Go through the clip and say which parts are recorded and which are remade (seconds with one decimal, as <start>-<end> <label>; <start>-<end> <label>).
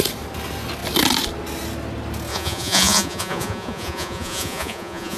0.0-2.3 recorded; 2.3-5.2 remade